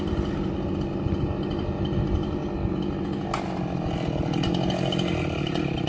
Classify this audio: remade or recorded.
recorded